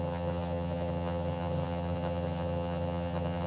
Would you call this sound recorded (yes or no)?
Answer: no